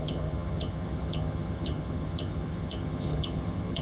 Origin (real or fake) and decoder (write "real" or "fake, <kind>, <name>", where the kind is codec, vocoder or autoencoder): fake, vocoder, HiFi-GAN